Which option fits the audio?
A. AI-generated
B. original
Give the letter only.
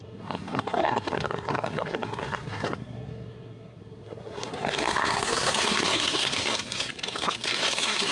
A